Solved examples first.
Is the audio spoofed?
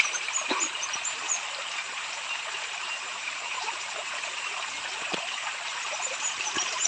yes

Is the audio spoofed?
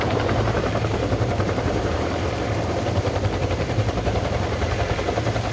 yes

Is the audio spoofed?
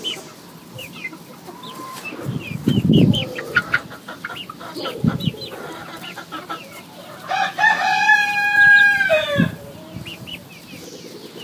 yes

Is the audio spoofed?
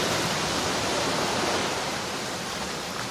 yes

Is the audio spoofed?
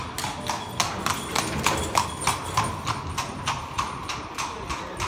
no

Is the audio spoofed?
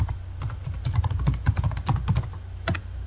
no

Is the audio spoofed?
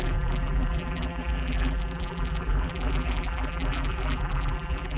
yes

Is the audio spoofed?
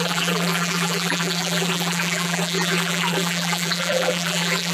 yes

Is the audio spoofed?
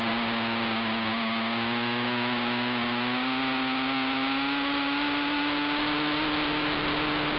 no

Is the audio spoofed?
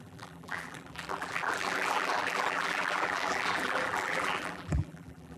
yes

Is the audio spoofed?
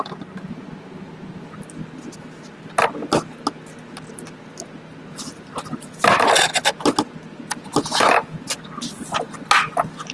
no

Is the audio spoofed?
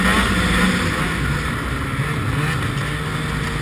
no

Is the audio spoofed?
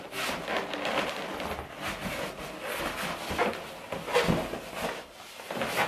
no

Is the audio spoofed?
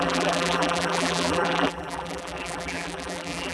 yes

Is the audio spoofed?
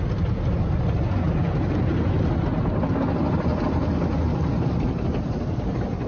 no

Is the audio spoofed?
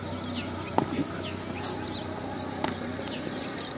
no